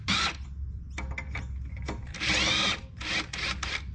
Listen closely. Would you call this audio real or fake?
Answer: real